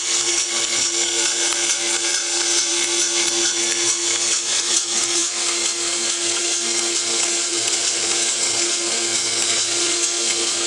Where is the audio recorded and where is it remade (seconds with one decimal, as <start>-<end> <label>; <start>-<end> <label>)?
0.0-10.7 remade